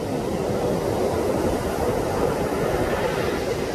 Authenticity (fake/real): real